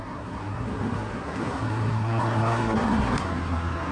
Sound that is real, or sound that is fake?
fake